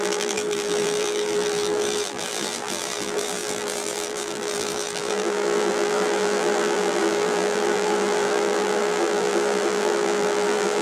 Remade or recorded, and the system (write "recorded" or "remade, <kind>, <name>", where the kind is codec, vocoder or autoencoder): remade, vocoder, BigVGAN v2